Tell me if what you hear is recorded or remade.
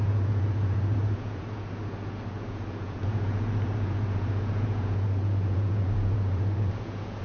remade